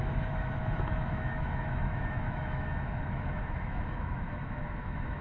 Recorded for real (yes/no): no